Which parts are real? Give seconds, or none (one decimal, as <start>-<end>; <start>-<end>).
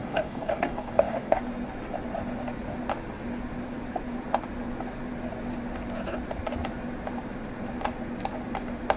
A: 1.4-9.0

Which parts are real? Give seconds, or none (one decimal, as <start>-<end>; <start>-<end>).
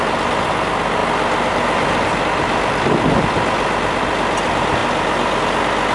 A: 0.0-5.9